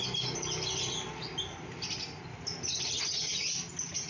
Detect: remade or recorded recorded